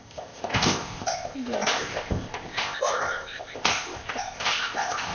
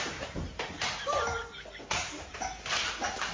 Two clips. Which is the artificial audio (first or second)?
first